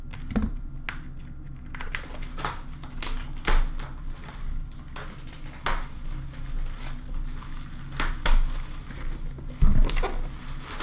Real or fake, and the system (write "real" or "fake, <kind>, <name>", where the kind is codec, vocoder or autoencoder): real